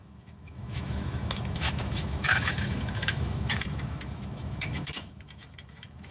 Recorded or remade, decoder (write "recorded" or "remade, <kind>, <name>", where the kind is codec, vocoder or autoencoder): remade, autoencoder, DAC-VAE